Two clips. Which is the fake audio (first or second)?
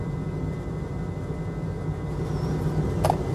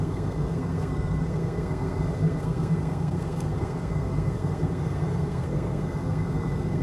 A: second